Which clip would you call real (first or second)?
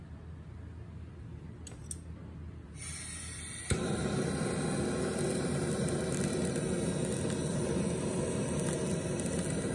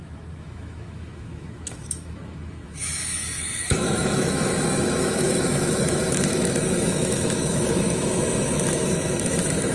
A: first